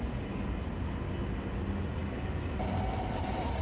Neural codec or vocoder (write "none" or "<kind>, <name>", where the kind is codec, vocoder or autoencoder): none